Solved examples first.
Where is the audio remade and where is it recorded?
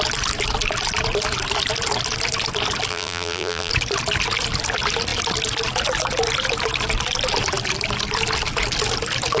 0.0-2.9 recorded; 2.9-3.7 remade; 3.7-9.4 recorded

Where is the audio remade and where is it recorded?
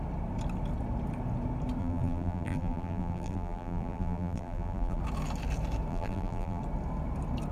0.0-1.8 recorded; 1.8-5.0 remade; 5.0-5.9 recorded; 5.9-6.6 remade; 6.6-7.5 recorded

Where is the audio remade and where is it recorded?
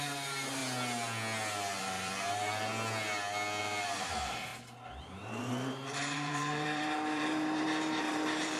0.0-0.6 remade; 0.6-1.8 recorded; 1.8-2.7 remade; 2.7-3.6 recorded; 3.6-4.5 remade; 4.5-5.0 recorded; 5.0-8.6 remade